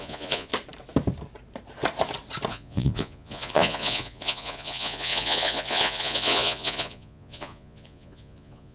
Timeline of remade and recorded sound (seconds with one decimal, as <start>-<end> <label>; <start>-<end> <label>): 0.0-0.5 remade; 0.5-2.5 recorded; 2.5-8.7 remade